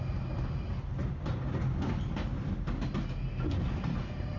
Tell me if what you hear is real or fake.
real